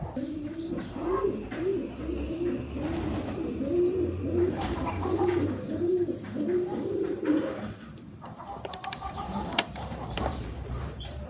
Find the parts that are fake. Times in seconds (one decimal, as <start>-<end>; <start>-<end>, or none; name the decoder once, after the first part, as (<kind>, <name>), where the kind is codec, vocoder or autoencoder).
0.0-1.7 (vocoder, BigVGAN v2); 4.2-11.3